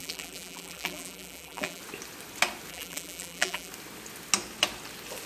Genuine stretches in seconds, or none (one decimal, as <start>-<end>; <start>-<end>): 1.8-2.7; 3.7-5.3